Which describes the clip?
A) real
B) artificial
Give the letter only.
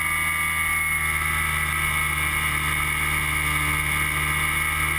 A